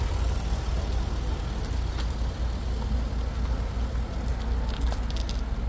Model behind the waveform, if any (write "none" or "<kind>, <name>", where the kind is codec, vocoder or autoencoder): none